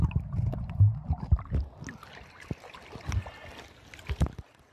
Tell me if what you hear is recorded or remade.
recorded